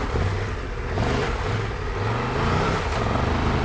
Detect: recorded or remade recorded